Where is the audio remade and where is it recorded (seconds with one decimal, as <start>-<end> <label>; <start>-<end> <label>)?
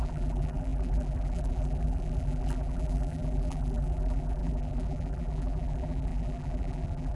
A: 0.0-7.2 remade